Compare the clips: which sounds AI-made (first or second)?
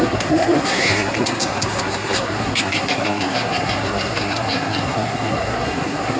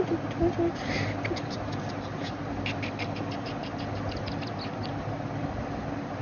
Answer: first